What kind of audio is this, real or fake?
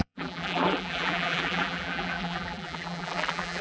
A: fake